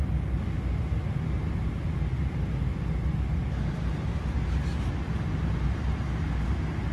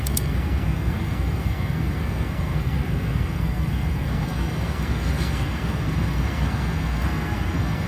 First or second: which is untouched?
first